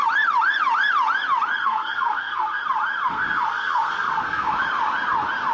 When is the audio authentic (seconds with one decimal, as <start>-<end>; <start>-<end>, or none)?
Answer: 0.0-1.6; 2.6-3.1; 4.5-5.5